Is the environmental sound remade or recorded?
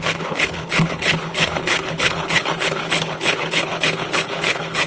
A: remade